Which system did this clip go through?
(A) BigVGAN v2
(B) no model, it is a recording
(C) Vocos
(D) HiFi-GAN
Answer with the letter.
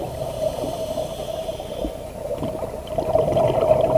B